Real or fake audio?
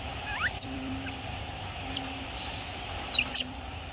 fake